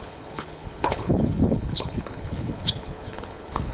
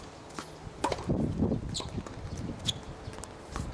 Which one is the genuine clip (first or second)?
second